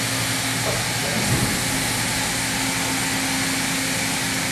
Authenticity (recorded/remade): recorded